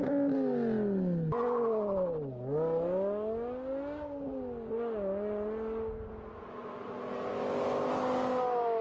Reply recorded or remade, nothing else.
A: recorded